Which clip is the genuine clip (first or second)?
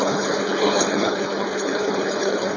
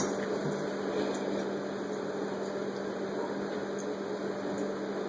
second